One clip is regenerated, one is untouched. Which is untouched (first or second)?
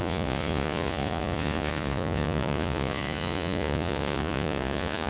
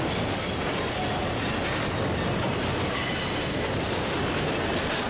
second